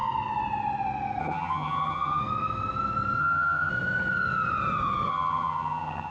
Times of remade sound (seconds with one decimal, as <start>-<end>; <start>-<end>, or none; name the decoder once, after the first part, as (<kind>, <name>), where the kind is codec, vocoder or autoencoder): 1.2-2.2 (vocoder, HiFi-GAN); 3.2-3.7; 5.1-6.1